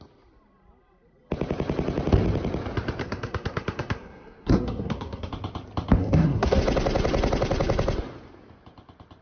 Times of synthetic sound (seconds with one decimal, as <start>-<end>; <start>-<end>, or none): 3.0-5.3; 6.0-6.6